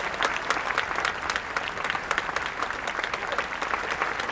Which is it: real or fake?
real